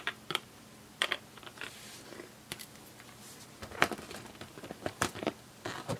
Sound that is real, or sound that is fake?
fake